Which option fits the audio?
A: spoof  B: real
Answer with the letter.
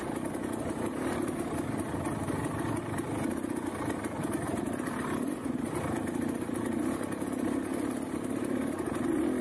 B